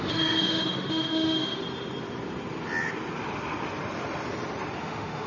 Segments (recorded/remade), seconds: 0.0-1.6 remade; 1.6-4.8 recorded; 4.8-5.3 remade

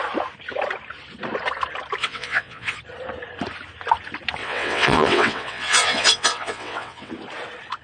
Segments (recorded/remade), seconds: 0.0-2.0 recorded; 2.0-2.8 remade; 2.8-4.4 recorded; 4.4-7.1 remade; 7.1-7.8 recorded

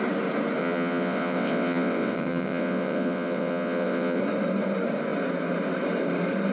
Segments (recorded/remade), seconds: 0.0-0.6 recorded; 0.6-4.2 remade; 4.2-6.5 recorded

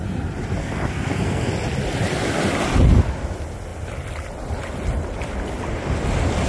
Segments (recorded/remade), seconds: 0.0-0.6 recorded; 0.6-1.5 remade; 1.5-6.5 recorded

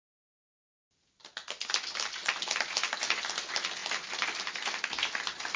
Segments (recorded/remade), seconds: 0.0-5.6 recorded